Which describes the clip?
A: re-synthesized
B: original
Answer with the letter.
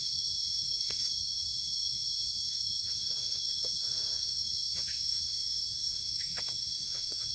A